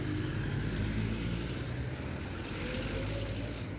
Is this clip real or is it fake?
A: real